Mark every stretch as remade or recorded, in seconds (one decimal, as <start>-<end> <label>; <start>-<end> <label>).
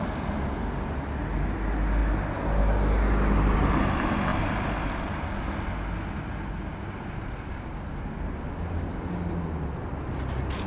0.0-10.7 recorded